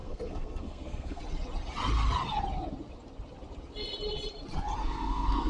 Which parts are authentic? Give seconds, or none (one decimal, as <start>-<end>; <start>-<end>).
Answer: 1.2-4.8